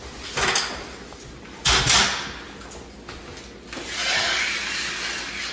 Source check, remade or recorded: recorded